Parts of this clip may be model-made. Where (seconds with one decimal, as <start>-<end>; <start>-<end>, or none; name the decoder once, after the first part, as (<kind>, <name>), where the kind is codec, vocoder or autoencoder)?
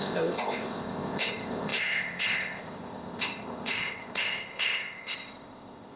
0.0-6.0 (codec, ZipCodec)